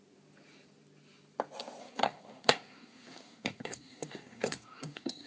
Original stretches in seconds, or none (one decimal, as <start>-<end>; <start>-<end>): 0.0-1.8